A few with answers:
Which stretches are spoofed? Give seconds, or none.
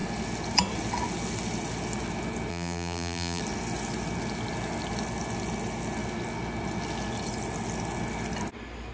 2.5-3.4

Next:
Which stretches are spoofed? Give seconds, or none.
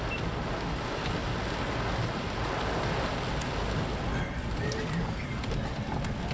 none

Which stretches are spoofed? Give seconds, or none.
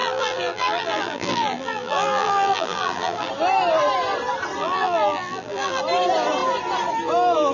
0.0-3.3; 4.6-5.8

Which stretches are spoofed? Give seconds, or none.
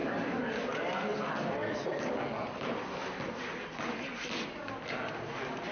none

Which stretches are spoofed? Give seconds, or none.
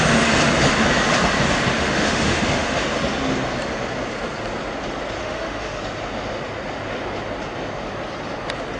1.8-2.8; 5.2-5.8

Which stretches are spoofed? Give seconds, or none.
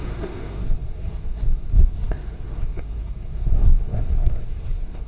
0.0-5.1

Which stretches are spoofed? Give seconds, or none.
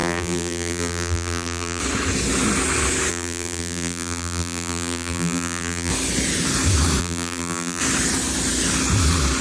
0.0-1.8; 3.1-5.9; 7.0-7.8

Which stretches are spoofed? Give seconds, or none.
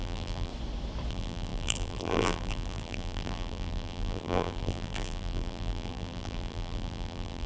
0.0-0.5; 1.1-7.5